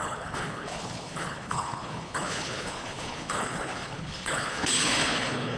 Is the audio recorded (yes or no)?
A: no